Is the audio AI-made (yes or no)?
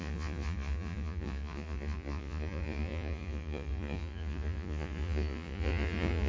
yes